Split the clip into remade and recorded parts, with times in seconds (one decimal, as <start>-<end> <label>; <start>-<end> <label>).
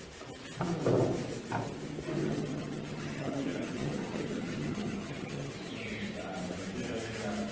0.0-2.2 recorded; 2.2-5.5 remade; 5.5-7.5 recorded